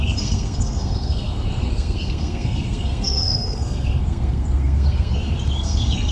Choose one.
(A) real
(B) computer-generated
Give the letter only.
B